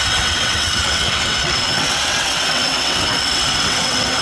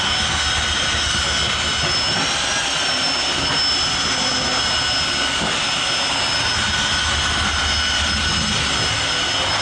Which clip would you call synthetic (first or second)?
first